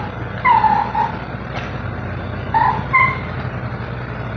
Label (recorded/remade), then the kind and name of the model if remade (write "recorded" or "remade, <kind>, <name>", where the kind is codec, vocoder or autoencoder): recorded